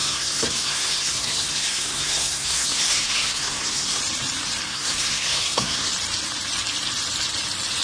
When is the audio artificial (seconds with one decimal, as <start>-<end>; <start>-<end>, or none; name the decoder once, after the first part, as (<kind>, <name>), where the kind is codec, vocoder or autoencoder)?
0.0-4.0 (codec, SNAC); 4.7-5.9